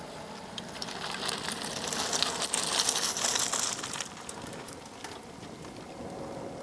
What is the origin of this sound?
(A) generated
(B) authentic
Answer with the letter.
B